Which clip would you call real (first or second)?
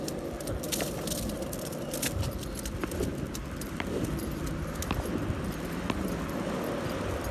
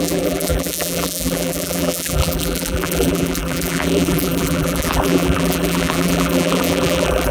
first